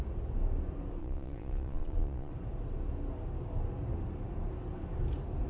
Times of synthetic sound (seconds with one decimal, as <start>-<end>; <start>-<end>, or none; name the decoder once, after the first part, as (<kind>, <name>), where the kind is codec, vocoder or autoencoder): 1.0-2.3 (vocoder, Vocos)